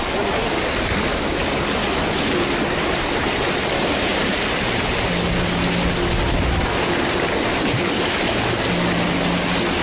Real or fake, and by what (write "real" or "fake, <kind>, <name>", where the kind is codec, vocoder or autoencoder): real